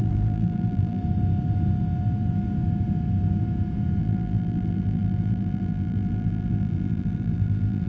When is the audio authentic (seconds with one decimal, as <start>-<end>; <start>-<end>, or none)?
1.0-4.0